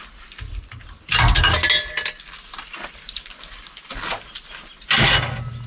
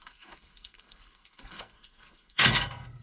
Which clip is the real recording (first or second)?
first